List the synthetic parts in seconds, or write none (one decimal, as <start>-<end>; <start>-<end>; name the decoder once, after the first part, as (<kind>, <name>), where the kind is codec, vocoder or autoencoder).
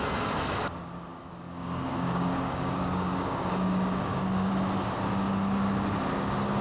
1.1-4.5 (codec, DAC)